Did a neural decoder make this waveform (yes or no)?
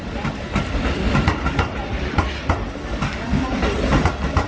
no